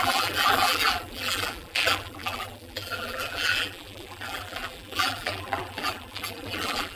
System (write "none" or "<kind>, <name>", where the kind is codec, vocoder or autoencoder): vocoder, BigVGAN v2